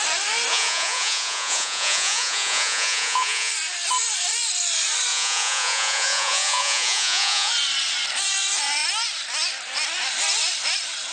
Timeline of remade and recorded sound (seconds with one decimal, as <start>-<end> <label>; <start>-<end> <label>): 0.0-0.5 recorded; 0.5-3.5 remade; 3.5-5.1 recorded; 5.1-7.5 remade; 7.5-11.1 recorded